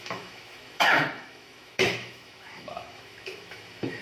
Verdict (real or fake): fake